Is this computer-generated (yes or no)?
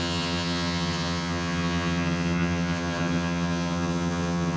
yes